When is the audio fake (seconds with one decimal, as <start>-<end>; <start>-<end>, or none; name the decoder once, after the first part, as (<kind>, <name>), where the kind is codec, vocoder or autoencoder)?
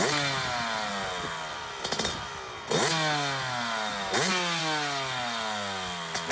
none